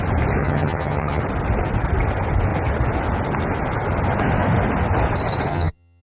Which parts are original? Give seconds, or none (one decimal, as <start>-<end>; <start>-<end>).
0.0-0.4; 1.2-5.5